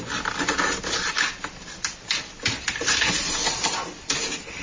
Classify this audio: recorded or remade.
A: recorded